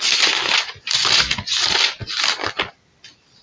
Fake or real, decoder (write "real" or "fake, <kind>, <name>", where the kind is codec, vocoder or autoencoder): real